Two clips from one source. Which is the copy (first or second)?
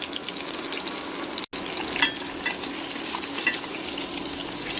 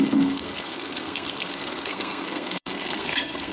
second